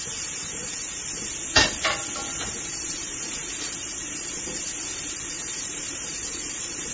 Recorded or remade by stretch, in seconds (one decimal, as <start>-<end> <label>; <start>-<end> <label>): 0.0-1.0 remade; 1.0-2.3 recorded; 2.3-6.9 remade